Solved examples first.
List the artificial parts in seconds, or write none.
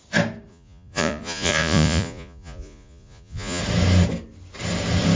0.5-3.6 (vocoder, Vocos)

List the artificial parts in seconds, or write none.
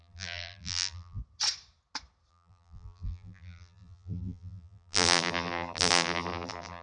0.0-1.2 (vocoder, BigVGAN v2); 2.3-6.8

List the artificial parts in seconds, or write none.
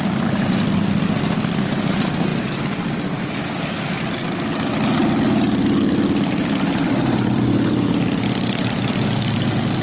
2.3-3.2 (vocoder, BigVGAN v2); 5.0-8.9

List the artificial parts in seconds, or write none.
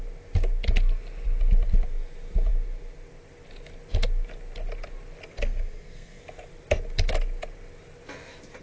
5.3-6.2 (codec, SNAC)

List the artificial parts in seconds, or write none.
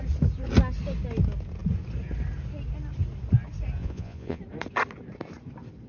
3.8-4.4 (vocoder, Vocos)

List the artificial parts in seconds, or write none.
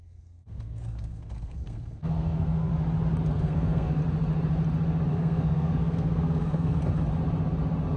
0.0-2.7 (codec, SNAC); 3.3-4.0; 5.1-6.8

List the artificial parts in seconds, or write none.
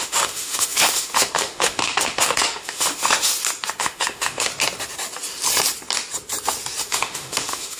0.0-3.3 (autoencoder, DAC-VAE); 3.8-4.5; 6.8-7.8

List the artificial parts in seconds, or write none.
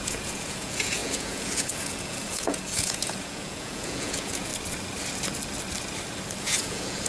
0.0-4.5 (vocoder, Vocos); 6.4-7.1